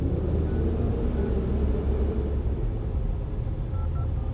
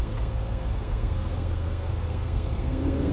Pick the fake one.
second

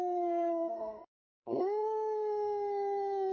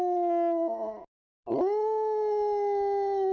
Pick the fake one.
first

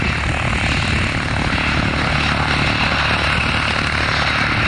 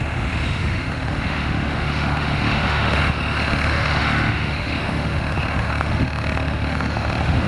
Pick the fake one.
second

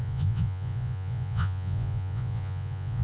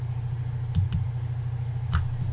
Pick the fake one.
first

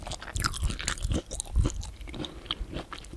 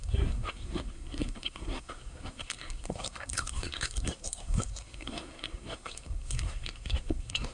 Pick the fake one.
second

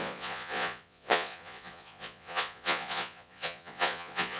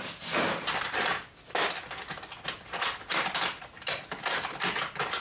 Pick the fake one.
first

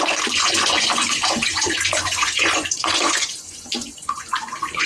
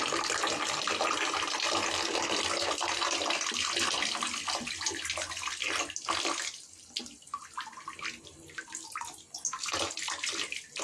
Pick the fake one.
first